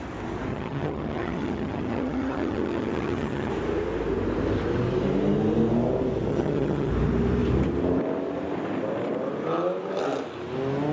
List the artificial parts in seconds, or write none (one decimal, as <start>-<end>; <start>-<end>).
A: 0.5-3.5; 6.3-6.9